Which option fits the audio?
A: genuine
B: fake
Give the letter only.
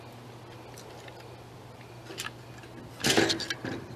A